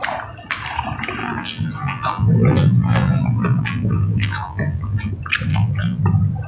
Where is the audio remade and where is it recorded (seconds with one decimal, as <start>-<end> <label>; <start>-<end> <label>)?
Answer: 0.0-1.2 recorded; 1.2-5.1 remade; 5.1-5.5 recorded; 5.5-6.0 remade; 6.0-6.5 recorded